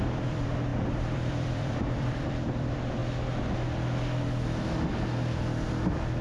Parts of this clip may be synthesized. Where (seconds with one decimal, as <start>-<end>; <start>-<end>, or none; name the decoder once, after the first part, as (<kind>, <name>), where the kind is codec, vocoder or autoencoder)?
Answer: 0.0-3.0 (vocoder, BigVGAN v2); 5.7-6.2